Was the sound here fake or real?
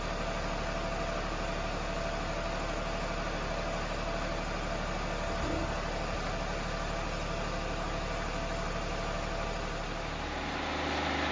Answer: real